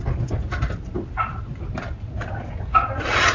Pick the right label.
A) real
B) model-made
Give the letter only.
A